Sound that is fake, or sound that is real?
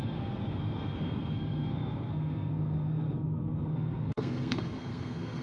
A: fake